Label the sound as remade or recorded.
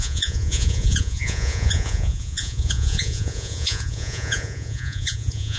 remade